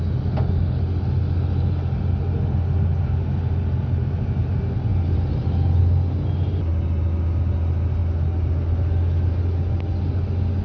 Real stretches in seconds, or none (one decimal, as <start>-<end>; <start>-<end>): 0.0-4.9; 5.8-10.6